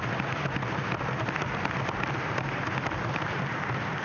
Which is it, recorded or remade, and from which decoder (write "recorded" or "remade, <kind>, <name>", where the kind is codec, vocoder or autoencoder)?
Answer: recorded